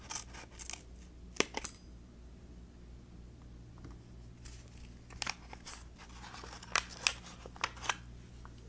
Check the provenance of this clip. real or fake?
real